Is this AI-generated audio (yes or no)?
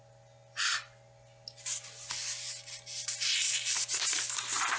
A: no